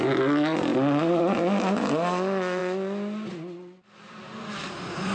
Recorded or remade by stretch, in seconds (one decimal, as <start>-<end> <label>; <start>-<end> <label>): 0.0-5.1 recorded